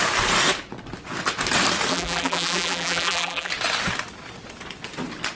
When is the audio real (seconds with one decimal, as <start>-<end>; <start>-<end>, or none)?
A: 0.0-1.9; 3.5-5.3